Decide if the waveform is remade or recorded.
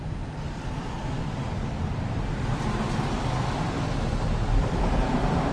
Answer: remade